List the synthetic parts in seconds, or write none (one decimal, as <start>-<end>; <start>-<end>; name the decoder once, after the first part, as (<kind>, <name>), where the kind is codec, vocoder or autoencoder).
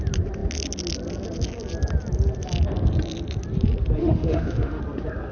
4.0-4.8 (autoencoder, DAC-VAE)